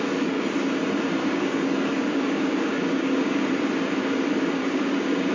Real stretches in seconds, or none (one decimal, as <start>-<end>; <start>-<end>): 0.0-1.2; 3.4-4.6